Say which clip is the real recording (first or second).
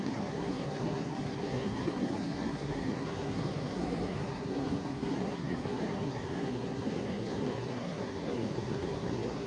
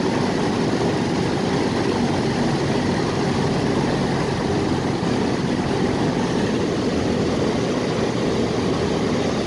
second